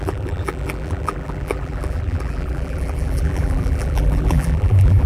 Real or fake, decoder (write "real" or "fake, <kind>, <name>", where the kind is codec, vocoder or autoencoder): fake, vocoder, BigVGAN v2